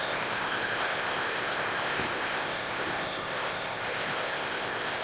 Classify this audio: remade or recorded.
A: remade